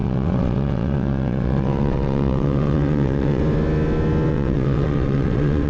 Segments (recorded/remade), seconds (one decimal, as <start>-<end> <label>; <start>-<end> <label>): 0.0-3.4 remade; 3.4-4.3 recorded; 4.3-5.7 remade